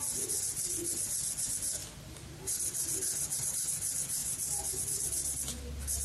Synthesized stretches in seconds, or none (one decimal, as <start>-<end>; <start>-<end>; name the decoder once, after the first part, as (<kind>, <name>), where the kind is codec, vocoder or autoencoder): none

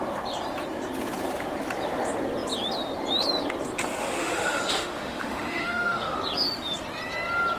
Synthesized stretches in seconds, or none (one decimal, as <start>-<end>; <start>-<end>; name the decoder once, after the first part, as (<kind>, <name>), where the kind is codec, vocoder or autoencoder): 4.0-6.2 (autoencoder, DAC-VAE)

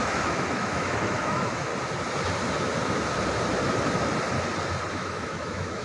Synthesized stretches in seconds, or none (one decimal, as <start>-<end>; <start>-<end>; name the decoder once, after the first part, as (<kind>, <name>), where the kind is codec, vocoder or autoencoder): 0.0-1.7 (autoencoder, DAC-VAE); 4.9-5.8